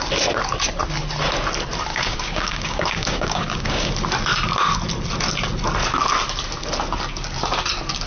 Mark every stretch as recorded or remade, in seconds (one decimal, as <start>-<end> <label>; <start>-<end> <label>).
0.0-1.9 recorded; 1.9-3.9 remade; 3.9-8.1 recorded